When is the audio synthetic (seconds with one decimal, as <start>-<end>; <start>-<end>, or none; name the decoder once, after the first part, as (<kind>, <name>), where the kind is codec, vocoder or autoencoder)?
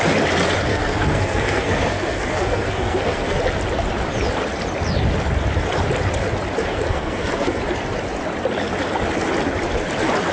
0.7-3.4 (codec, SNAC); 6.6-7.6